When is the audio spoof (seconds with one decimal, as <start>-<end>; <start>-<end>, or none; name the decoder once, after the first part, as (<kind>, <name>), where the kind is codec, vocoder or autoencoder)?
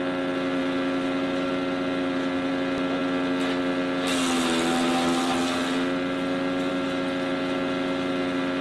none